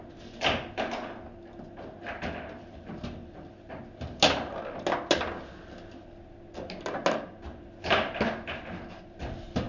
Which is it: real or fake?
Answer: real